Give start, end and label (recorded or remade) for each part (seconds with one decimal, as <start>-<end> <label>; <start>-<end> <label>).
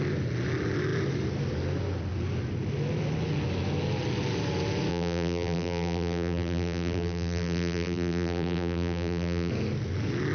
0.0-4.9 recorded; 4.9-9.5 remade; 9.5-10.3 recorded